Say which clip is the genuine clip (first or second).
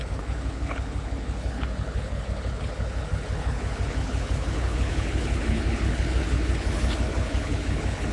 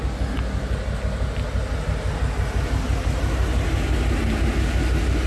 second